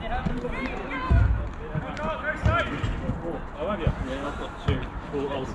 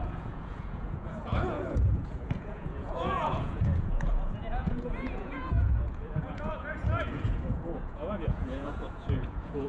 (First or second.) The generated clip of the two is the second